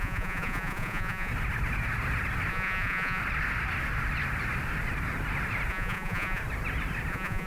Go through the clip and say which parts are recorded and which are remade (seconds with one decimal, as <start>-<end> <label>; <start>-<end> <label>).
0.0-1.3 remade; 1.3-2.5 recorded; 2.5-3.2 remade; 3.2-5.7 recorded; 5.7-6.4 remade; 6.4-7.1 recorded; 7.1-7.5 remade